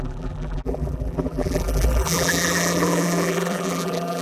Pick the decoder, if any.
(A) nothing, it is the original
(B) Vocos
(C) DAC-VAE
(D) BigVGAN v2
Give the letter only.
D